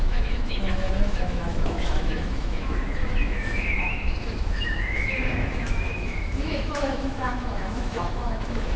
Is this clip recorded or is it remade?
remade